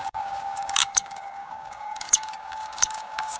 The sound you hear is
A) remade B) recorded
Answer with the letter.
A